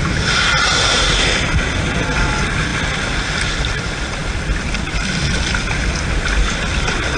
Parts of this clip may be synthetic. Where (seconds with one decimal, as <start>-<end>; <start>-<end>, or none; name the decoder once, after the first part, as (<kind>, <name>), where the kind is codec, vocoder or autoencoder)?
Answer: none

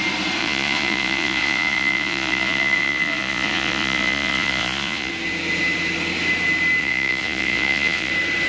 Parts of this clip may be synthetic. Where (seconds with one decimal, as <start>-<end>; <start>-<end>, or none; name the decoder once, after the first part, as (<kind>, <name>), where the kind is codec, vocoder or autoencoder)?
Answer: 0.4-5.1 (vocoder, Vocos); 6.8-8.1

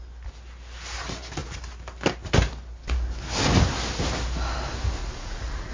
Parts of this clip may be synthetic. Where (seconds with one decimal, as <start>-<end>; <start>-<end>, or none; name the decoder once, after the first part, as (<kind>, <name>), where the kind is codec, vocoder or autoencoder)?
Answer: 5.0-5.7 (vocoder, Vocos)

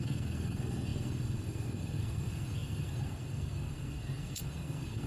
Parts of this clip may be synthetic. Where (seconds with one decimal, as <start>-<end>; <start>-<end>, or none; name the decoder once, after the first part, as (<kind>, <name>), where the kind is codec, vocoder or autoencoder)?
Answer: 0.0-5.1 (codec, SNAC)